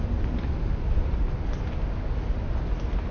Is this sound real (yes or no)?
yes